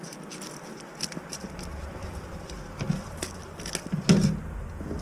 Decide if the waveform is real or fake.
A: real